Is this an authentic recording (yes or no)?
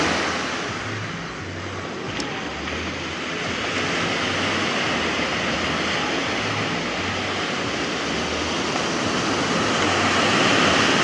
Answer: yes